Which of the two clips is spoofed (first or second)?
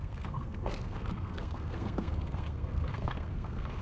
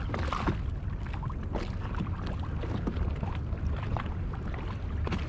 first